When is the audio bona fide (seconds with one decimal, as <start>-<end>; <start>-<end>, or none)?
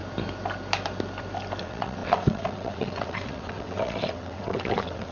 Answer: 0.0-1.6